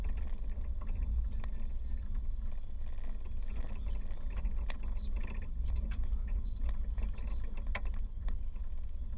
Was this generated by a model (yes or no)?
no